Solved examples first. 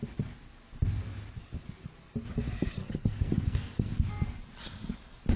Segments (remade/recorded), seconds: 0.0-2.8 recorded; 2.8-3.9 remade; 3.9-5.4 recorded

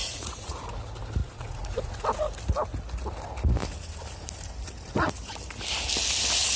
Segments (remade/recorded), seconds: 0.0-0.6 remade; 0.6-1.2 recorded; 1.2-1.9 remade; 1.9-6.6 recorded

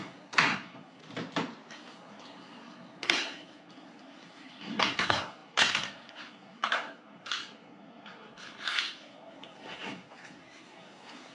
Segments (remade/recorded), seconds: 0.0-1.0 remade; 1.0-1.7 recorded; 1.7-11.3 remade

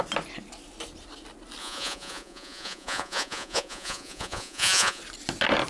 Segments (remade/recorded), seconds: 0.0-1.6 recorded; 1.6-5.0 remade; 5.0-5.7 recorded

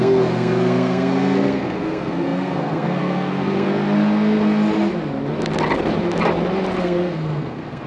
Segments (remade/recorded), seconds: 0.0-3.7 remade; 3.7-6.8 recorded; 6.8-7.9 remade

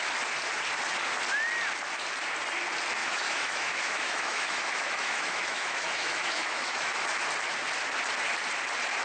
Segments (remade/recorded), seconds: 0.0-3.0 recorded; 3.0-6.9 remade; 6.9-9.0 recorded